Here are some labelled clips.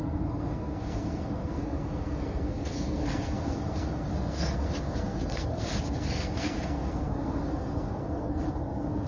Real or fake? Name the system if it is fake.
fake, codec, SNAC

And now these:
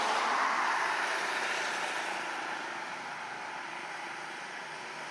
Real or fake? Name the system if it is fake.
real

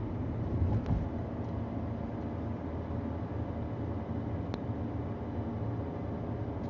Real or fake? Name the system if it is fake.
real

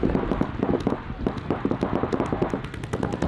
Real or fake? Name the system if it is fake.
real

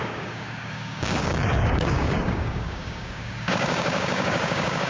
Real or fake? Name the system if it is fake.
fake, codec, DAC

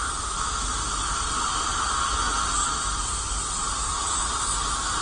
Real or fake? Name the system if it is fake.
real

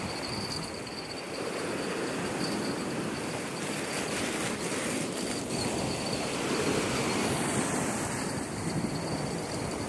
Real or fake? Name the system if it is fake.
real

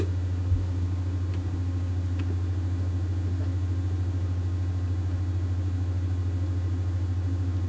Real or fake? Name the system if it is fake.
real